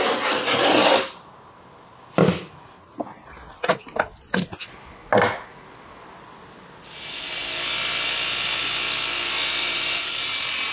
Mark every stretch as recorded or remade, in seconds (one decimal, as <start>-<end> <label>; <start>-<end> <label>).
0.0-10.7 recorded